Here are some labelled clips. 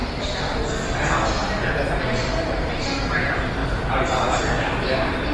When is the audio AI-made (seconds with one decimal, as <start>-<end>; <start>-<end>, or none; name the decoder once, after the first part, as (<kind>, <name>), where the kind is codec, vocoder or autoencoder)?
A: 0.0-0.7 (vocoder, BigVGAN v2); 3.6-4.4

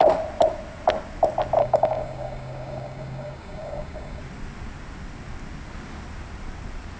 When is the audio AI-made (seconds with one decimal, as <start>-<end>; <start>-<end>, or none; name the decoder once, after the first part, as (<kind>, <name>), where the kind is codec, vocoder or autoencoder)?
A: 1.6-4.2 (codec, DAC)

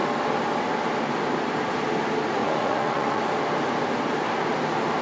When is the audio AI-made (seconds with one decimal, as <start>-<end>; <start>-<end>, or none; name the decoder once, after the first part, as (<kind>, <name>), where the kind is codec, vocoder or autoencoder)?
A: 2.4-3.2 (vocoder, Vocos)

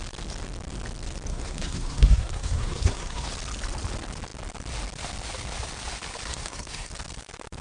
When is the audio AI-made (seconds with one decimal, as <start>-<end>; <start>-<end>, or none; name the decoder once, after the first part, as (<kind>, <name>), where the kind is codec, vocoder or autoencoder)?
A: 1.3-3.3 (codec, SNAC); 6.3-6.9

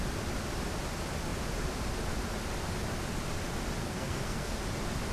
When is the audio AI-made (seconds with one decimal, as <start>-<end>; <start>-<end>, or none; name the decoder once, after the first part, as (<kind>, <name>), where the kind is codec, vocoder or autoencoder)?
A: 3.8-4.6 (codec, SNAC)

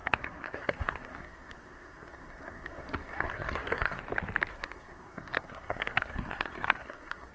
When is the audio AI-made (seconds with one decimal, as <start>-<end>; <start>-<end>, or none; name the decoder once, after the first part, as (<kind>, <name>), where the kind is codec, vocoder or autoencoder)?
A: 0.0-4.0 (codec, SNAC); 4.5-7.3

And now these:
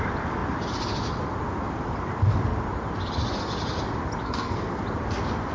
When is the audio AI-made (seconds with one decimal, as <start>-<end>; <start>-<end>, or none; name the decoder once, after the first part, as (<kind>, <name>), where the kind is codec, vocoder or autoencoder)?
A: 4.2-4.8 (codec, SNAC)

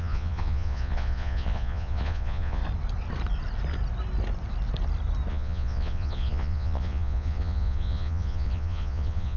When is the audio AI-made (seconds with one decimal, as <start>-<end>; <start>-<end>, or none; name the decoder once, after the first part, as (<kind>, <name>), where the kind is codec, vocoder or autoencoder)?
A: 0.0-2.6 (vocoder, Vocos); 5.3-9.4